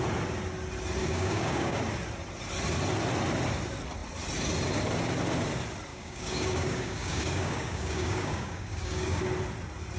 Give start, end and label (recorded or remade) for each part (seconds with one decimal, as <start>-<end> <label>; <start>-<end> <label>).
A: 0.0-1.0 recorded; 1.0-1.8 remade; 1.8-5.9 recorded; 5.9-9.2 remade; 9.2-10.0 recorded